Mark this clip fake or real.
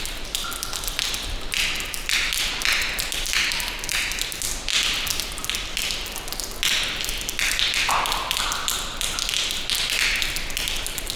real